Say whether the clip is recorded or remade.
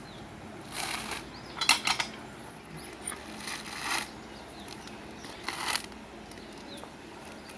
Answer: recorded